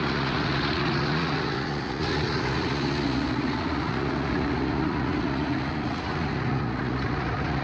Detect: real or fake fake